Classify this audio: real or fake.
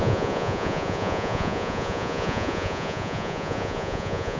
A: fake